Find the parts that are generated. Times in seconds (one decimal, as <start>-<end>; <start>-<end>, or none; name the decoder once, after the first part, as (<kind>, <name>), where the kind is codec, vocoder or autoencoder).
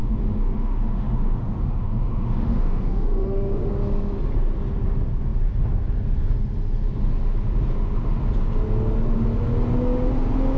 0.0-3.7 (autoencoder, DAC-VAE)